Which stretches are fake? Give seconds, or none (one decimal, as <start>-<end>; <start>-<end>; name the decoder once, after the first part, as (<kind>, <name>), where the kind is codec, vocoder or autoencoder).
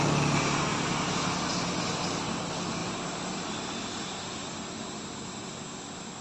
0.7-1.3 (vocoder, BigVGAN v2); 2.8-5.8